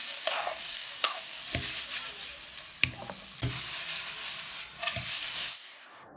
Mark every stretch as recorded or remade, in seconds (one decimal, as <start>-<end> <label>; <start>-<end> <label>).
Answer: 0.0-1.4 remade; 1.4-5.1 recorded; 5.1-6.2 remade